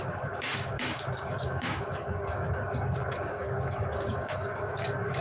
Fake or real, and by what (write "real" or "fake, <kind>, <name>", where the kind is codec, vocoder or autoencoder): fake, codec, DAC